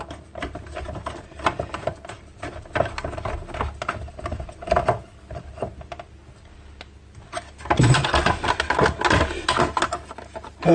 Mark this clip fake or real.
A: real